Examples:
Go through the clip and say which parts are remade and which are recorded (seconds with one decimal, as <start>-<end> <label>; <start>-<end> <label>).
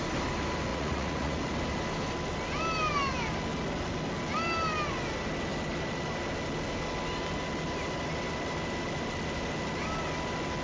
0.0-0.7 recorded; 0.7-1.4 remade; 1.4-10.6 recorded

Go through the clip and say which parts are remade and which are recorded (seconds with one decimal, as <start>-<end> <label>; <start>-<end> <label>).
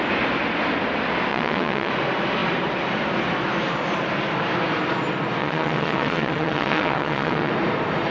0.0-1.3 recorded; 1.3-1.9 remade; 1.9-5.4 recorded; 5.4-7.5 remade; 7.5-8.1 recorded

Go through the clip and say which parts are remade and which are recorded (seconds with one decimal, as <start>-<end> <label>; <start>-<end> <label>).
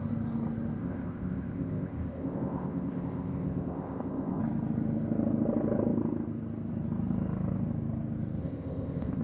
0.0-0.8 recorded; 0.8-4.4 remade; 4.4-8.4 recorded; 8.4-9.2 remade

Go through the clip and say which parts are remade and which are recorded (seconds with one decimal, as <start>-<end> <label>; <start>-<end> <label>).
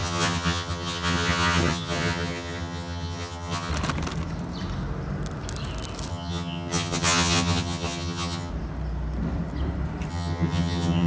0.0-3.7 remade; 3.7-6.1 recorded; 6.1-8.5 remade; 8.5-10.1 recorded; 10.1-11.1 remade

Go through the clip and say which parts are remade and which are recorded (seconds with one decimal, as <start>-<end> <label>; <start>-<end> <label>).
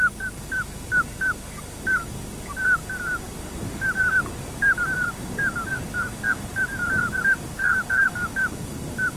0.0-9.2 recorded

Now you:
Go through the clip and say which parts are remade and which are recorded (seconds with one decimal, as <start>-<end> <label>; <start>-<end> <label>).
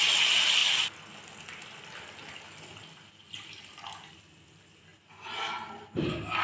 0.0-6.4 recorded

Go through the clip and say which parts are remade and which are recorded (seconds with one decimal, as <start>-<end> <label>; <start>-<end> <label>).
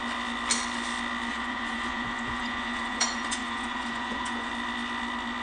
0.0-1.3 recorded; 1.3-4.5 remade; 4.5-5.4 recorded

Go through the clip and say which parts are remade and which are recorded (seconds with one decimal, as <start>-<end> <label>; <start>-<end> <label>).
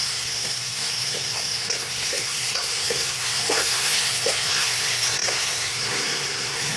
0.0-6.8 remade